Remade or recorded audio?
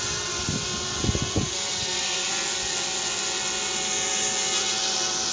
recorded